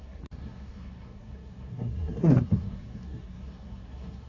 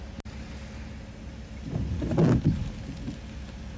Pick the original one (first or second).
second